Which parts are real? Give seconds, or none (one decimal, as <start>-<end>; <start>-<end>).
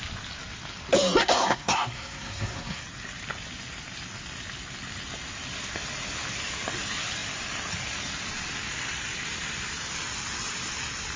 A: 0.0-1.2; 2.8-11.2